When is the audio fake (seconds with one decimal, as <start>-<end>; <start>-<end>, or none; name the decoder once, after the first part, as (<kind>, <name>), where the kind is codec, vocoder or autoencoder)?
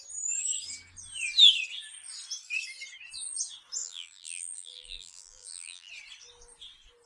3.8-5.9 (vocoder, BigVGAN v2)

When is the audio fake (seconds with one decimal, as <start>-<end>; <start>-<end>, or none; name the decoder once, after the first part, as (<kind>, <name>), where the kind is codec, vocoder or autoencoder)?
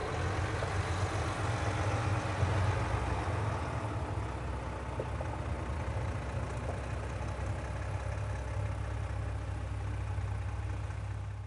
none